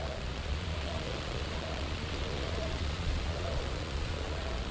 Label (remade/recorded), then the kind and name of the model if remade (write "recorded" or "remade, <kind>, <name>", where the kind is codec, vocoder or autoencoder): remade, vocoder, Vocos